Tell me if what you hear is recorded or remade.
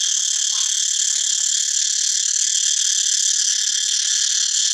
recorded